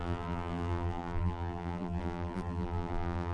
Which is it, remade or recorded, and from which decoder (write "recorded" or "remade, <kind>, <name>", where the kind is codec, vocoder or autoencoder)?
remade, vocoder, BigVGAN v2